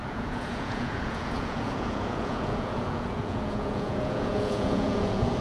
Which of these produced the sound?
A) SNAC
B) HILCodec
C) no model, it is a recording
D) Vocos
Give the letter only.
D